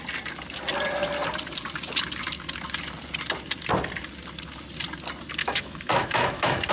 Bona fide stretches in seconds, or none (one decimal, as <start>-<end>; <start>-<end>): 0.0-5.4